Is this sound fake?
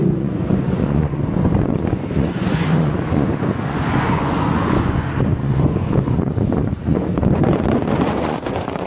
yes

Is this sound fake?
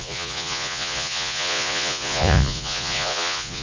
yes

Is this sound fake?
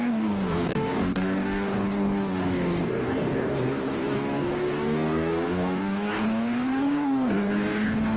yes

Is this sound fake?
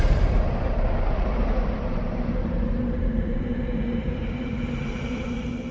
yes